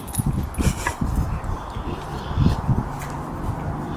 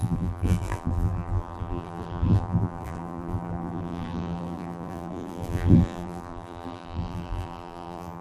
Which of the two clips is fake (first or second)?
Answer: second